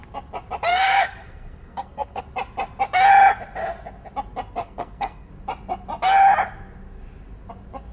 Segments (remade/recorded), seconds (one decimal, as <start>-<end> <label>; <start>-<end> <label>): 0.0-0.7 recorded; 0.7-2.2 remade; 2.2-4.6 recorded; 4.6-5.3 remade; 5.3-7.9 recorded